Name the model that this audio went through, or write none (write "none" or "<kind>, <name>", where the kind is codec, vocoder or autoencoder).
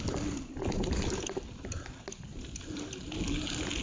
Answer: none